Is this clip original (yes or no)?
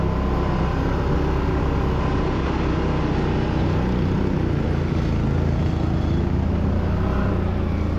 yes